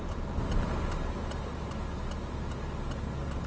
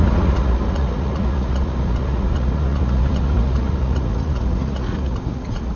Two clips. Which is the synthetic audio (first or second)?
second